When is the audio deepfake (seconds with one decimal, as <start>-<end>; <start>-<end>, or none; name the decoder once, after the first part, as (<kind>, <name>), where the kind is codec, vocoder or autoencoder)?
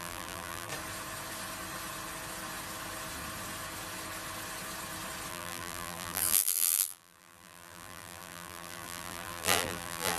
0.0-0.7 (vocoder, BigVGAN v2); 5.3-10.2